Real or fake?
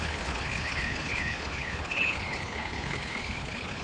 fake